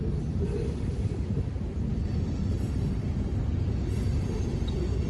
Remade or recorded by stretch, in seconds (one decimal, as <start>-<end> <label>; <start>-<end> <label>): 0.0-5.1 recorded